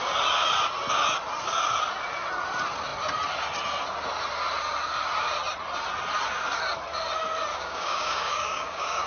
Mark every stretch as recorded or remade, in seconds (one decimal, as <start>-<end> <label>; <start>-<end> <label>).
0.0-7.5 recorded; 7.5-9.1 remade